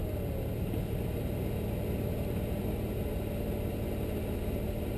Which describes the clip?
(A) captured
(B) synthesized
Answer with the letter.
A